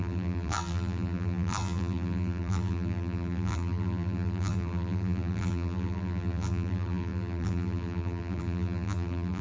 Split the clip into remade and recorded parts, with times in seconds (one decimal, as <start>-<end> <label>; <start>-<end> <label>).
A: 0.0-9.4 remade